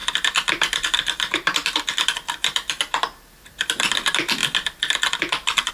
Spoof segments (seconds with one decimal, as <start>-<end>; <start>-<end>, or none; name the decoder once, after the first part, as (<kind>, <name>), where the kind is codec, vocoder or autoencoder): 0.0-3.3 (vocoder, BigVGAN v2)